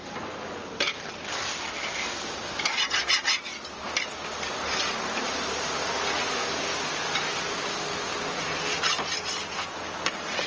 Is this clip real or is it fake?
real